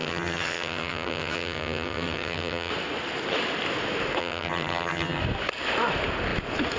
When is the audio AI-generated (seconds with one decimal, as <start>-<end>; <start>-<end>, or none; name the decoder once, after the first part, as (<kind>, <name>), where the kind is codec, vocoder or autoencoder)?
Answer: 0.0-2.7 (vocoder, HiFi-GAN); 4.2-5.2